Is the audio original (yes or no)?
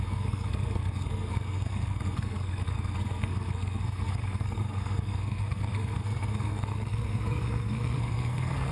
no